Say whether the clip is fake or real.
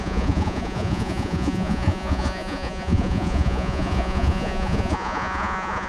fake